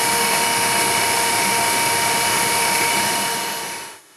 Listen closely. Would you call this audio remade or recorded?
remade